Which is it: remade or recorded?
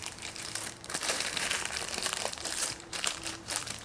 remade